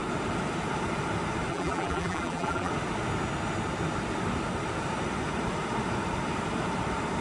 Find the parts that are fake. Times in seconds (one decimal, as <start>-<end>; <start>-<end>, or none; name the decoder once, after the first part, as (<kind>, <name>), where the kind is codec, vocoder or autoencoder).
1.5-2.7 (vocoder, BigVGAN v2)